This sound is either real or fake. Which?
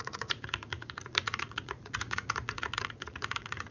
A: fake